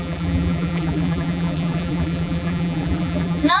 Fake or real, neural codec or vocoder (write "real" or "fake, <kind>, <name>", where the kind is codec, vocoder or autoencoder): fake, vocoder, BigVGAN v2